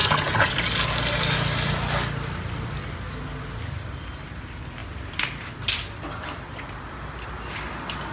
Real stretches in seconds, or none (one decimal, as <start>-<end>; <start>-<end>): 0.0-8.1